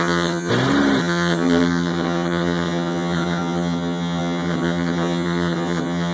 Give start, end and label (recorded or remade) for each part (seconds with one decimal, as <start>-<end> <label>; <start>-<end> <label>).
0.0-0.5 remade; 0.5-1.0 recorded; 1.0-6.1 remade